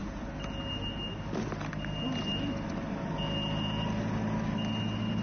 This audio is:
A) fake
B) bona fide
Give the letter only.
B